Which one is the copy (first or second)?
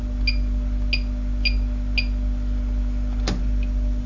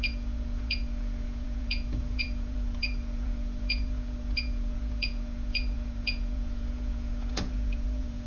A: second